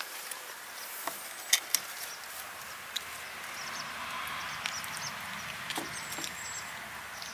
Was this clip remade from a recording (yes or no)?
no